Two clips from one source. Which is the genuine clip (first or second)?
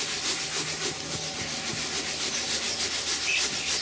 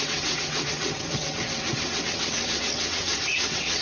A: first